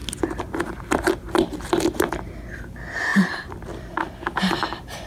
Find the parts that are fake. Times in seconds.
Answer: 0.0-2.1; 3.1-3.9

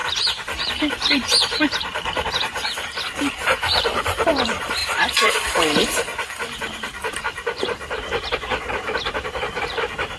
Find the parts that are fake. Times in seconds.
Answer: 0.0-6.1; 7.2-10.2